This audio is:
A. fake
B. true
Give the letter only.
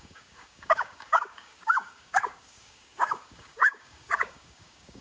A